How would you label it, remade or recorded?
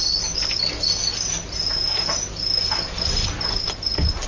recorded